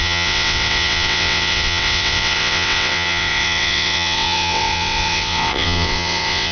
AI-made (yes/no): yes